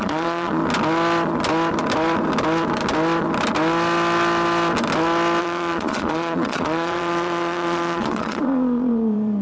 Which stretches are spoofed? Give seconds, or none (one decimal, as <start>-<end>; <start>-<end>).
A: 0.0-0.6; 5.4-9.4